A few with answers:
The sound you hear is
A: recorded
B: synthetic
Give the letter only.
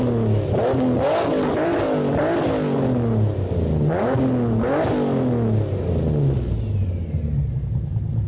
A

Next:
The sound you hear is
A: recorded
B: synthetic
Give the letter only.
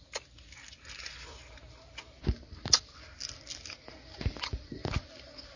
A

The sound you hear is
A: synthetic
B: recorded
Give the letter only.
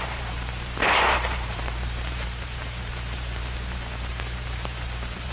A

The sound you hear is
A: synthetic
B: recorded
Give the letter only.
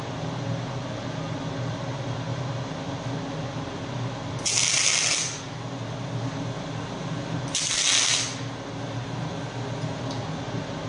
B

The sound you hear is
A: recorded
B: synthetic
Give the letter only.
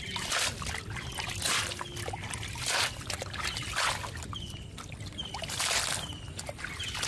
A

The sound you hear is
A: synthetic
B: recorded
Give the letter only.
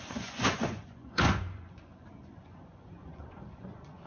A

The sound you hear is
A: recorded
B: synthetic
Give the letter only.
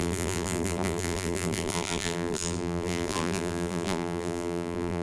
B